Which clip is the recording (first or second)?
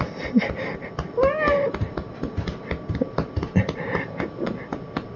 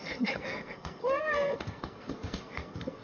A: first